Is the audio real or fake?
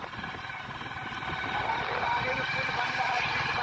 real